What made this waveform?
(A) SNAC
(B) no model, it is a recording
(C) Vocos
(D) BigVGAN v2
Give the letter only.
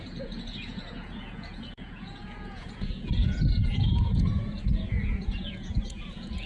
C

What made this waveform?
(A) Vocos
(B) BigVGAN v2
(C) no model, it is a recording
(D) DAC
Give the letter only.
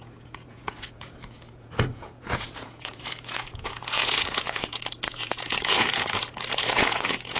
A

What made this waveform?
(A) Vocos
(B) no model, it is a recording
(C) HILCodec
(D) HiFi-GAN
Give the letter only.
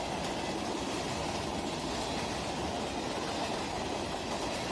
B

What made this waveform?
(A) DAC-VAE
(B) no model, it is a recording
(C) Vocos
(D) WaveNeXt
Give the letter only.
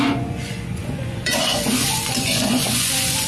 C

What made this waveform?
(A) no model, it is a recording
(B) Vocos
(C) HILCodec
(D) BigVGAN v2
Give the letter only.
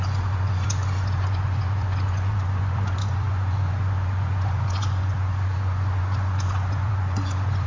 B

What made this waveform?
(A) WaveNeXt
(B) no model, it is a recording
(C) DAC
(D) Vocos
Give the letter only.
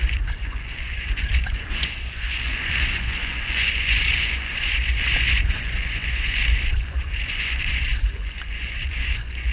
D